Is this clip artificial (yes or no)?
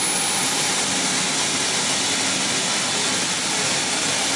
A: no